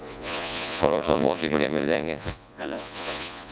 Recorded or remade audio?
remade